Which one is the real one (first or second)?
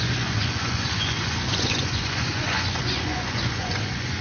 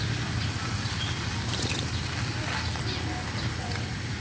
second